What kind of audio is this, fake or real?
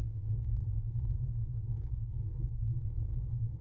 fake